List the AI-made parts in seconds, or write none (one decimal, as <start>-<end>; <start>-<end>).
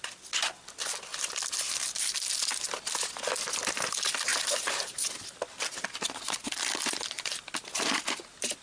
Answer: none